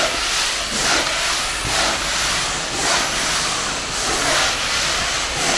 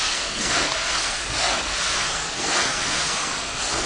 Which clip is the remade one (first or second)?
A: second